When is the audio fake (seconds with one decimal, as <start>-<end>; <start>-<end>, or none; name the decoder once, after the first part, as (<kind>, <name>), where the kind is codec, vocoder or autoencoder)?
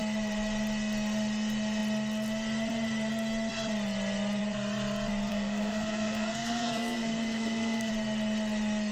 5.3-7.9 (codec, SNAC)